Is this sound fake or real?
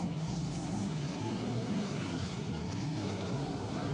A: fake